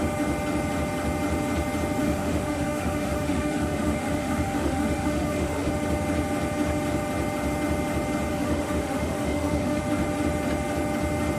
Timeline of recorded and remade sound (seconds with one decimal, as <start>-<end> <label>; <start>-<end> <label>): 0.0-2.0 recorded; 2.0-5.7 remade; 5.7-8.3 recorded; 8.3-9.8 remade; 9.8-11.4 recorded